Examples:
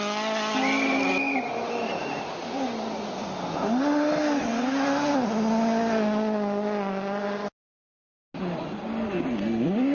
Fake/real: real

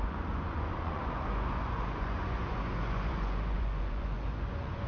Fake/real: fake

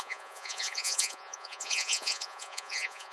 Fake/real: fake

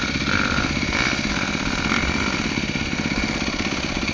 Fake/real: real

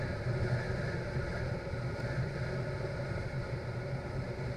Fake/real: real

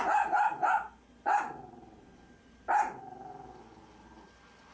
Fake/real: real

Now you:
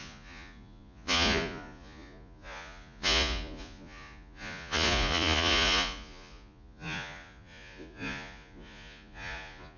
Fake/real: fake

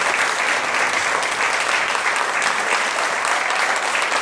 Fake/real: real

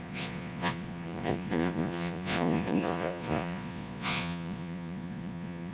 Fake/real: fake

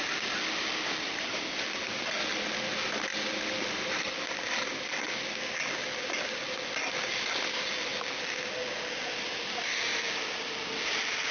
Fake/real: real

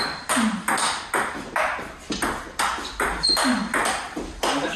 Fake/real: real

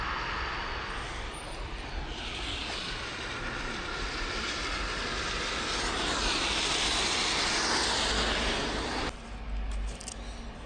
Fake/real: real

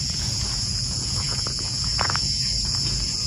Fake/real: fake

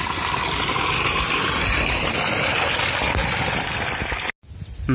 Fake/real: real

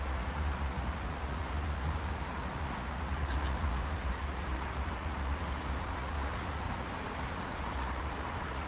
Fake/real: fake